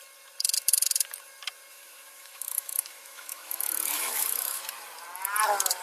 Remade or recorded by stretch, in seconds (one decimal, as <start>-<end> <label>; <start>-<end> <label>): 0.0-1.7 recorded; 1.7-4.6 remade; 4.6-5.8 recorded